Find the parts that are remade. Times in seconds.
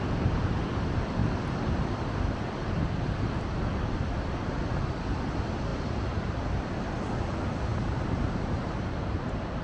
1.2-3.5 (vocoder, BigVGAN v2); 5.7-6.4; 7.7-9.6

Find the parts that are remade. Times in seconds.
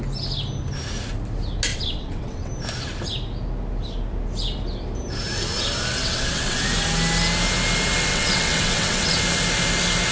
1.7-2.5 (vocoder, WaveNeXt); 5.9-6.6; 8.1-9.2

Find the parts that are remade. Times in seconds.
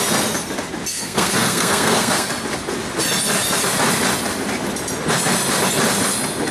0.9-2.3 (codec, SNAC)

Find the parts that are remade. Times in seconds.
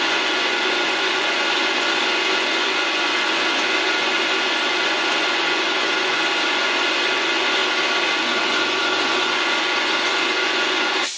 0.0-7.6 (vocoder, Vocos); 8.1-11.2